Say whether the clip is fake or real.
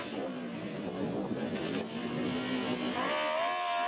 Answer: real